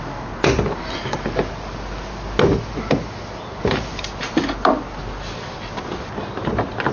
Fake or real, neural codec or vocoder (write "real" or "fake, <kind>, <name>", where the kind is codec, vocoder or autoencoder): real